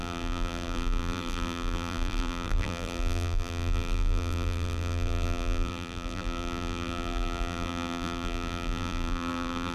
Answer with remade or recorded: remade